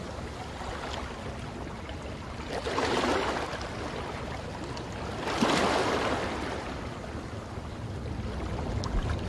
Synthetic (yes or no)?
no